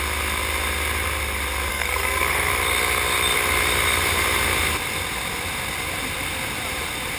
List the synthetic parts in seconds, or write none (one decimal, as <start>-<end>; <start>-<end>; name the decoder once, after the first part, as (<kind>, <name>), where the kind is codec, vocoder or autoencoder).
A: 1.7-2.5 (codec, SNAC)

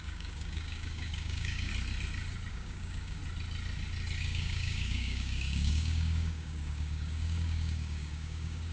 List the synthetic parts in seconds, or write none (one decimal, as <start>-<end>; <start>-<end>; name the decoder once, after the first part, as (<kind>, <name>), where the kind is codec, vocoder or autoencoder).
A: 0.0-1.7 (codec, DAC); 2.5-3.2; 4.2-8.7

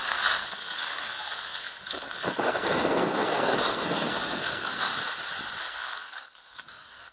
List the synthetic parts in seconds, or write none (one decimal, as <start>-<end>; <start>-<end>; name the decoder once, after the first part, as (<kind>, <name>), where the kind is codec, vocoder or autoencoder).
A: 0.0-4.9 (codec, SNAC); 5.6-7.1

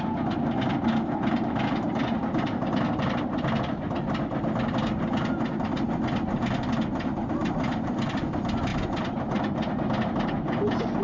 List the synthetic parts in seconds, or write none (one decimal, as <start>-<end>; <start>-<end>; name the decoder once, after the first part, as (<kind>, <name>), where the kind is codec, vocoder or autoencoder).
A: none